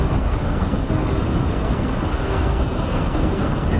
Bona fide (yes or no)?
no